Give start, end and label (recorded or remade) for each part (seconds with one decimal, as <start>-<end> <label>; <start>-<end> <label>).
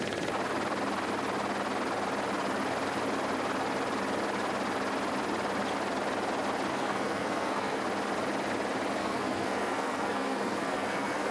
0.0-6.7 recorded; 6.7-7.8 remade; 7.8-9.0 recorded; 9.0-11.3 remade